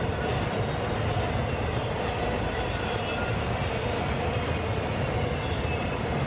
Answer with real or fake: real